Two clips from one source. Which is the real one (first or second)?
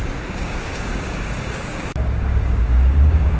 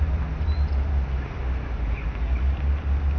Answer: second